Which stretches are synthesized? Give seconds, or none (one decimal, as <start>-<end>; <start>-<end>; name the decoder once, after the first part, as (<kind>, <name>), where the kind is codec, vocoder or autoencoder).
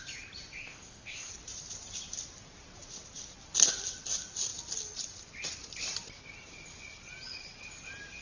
0.6-1.3 (codec, ZipCodec)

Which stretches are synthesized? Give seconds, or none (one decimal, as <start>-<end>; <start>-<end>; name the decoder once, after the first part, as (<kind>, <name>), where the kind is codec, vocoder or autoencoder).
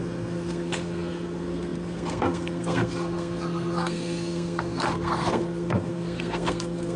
0.0-7.0 (codec, SNAC)